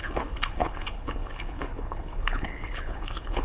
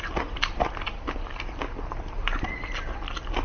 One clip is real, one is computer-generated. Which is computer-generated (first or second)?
first